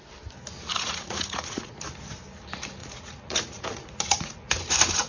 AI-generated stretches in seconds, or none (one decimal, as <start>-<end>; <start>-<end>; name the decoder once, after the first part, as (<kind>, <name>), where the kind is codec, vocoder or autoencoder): 0.7-1.7 (vocoder, Vocos); 2.8-4.5

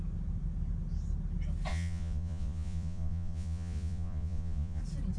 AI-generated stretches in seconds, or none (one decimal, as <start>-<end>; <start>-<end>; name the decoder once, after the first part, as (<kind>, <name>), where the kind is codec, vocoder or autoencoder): 1.7-4.8 (vocoder, Vocos)

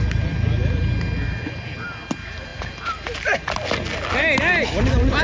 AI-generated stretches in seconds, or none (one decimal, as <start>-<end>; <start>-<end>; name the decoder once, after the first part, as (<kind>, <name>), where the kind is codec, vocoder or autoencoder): none

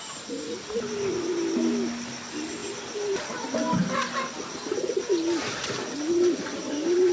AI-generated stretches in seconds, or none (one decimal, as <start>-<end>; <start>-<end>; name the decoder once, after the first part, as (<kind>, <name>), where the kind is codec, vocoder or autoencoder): none

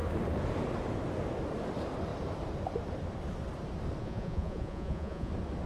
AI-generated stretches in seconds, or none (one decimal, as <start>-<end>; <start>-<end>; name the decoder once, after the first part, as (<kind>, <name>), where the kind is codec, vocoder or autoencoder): 4.0-5.3 (vocoder, Vocos)

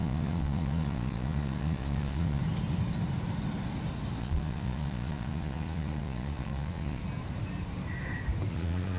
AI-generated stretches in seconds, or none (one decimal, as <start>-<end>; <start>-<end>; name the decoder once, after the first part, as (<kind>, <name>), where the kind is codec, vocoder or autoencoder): 0.0-2.4 (vocoder, Vocos); 4.2-7.0; 8.5-9.0

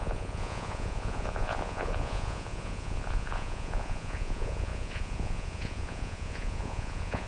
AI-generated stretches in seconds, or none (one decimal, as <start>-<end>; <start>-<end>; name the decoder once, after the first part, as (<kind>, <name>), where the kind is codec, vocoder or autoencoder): 0.0-7.3 (vocoder, Vocos)

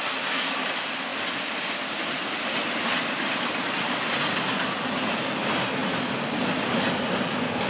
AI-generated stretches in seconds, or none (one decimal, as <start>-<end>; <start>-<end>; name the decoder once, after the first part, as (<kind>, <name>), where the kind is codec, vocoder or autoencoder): none